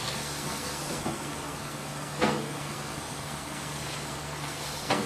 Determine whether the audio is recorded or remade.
remade